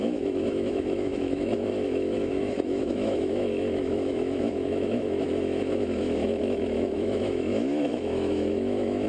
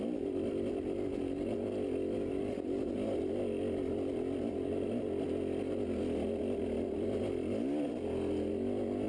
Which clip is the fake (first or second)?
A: first